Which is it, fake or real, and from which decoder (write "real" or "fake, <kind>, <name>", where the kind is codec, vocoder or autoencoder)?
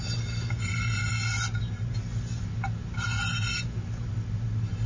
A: real